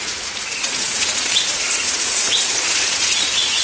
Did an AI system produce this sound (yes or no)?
yes